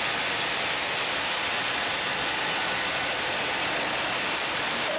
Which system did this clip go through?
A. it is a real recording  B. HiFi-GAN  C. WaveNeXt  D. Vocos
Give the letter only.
A